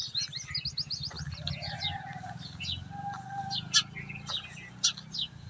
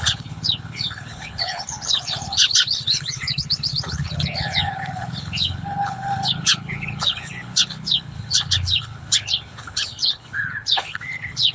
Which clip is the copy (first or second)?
second